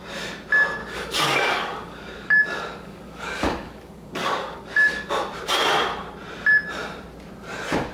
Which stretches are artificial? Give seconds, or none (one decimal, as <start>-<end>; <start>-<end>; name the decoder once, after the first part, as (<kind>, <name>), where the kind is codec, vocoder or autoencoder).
0.8-5.1 (codec, DAC)